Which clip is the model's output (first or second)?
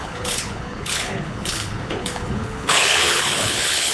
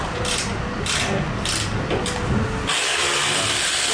first